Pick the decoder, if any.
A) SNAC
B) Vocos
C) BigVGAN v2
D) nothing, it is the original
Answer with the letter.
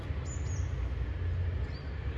D